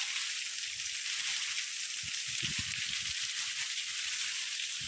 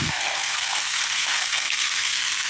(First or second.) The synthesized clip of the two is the second